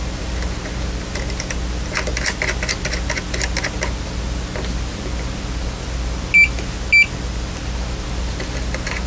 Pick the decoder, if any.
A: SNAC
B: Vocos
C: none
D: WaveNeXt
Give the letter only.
C